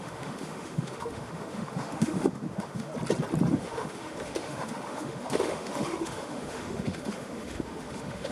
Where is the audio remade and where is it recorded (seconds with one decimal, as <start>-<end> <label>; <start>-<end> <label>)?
0.0-2.9 remade; 2.9-3.5 recorded; 3.5-8.3 remade